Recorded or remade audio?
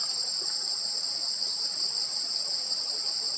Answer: recorded